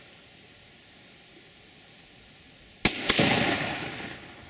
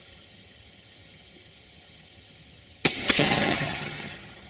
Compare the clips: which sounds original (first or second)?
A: first